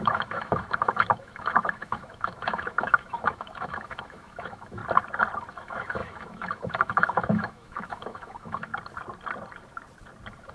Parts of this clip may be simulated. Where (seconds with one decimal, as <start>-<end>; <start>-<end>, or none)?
0.0-4.8; 5.5-8.7